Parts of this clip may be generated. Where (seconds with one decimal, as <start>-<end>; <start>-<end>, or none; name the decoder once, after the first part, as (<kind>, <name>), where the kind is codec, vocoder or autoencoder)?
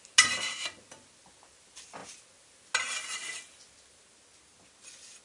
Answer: none